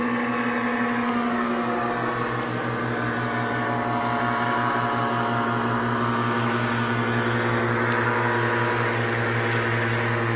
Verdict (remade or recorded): recorded